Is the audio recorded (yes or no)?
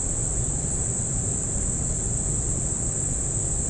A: no